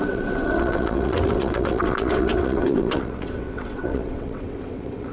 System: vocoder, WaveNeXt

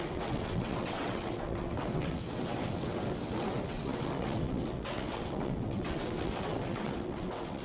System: vocoder, WaveNeXt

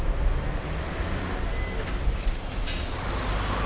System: none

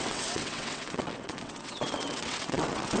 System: vocoder, WaveNeXt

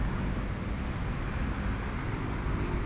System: none